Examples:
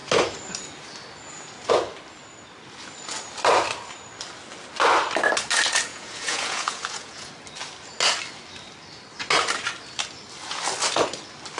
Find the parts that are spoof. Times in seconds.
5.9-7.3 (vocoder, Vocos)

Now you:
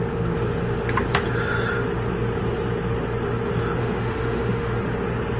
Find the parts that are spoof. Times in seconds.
3.8-4.8 (autoencoder, DAC-VAE)

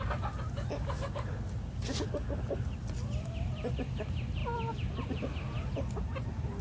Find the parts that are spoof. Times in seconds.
none

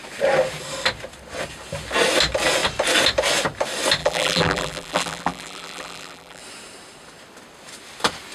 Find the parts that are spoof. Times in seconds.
4.0-6.4 (vocoder, BigVGAN v2)

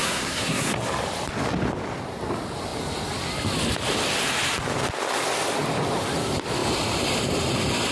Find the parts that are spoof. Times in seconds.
0.0-0.7 (codec, SNAC)